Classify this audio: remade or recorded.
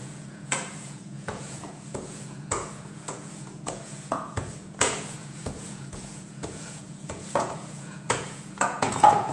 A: remade